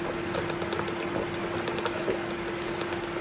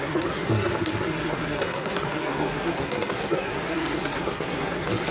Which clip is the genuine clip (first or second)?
first